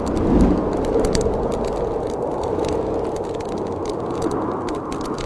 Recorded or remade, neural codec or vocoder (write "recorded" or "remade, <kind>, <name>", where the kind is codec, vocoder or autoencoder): recorded